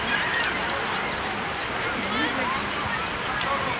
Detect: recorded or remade recorded